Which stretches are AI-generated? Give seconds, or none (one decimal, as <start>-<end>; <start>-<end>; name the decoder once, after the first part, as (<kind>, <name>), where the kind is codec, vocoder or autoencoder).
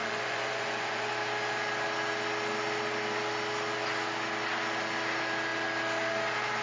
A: 0.0-1.1 (vocoder, Vocos)